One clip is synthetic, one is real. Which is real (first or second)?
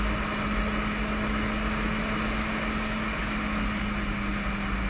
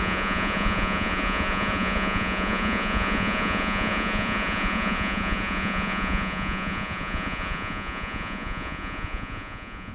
first